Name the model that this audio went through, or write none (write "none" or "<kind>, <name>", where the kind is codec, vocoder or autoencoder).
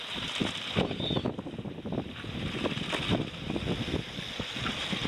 none